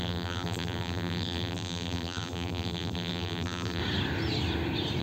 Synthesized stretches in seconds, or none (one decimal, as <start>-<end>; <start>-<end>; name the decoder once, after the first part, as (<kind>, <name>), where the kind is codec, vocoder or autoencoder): 0.0-3.8 (vocoder, BigVGAN v2)

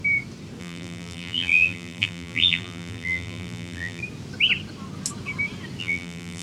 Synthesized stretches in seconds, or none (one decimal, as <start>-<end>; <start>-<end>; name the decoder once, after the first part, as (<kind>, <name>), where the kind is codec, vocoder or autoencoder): 0.6-4.0 (vocoder, BigVGAN v2); 5.8-6.4

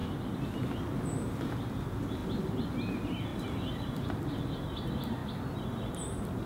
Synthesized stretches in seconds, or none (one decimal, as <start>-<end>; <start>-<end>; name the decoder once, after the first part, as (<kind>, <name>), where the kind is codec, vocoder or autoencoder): 0.0-0.8 (vocoder, BigVGAN v2); 3.3-4.3